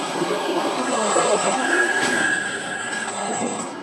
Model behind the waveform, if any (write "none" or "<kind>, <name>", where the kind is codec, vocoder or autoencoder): codec, SNAC